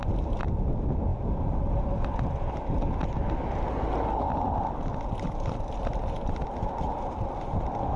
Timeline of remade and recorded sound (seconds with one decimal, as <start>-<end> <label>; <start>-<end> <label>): 0.0-8.0 recorded